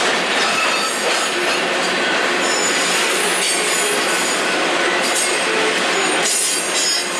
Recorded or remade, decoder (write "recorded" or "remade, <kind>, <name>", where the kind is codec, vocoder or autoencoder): recorded